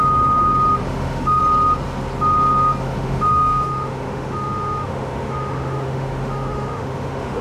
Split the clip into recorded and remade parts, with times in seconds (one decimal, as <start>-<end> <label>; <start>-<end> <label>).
0.0-0.8 recorded; 0.8-1.4 remade; 1.4-2.8 recorded; 2.8-7.4 remade